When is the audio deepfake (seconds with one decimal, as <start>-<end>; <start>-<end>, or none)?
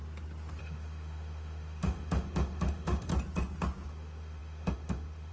0.6-3.1; 3.9-5.3